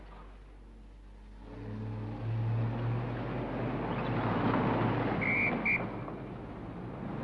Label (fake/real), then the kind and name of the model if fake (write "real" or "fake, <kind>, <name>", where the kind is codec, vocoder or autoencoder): real